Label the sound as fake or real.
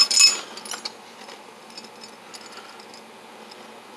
real